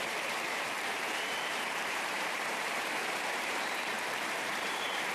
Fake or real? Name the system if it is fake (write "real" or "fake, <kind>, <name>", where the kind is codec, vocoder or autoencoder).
fake, vocoder, BigVGAN v2